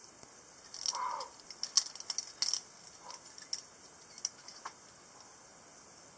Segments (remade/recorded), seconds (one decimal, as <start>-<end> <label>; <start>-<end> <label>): 0.0-6.2 recorded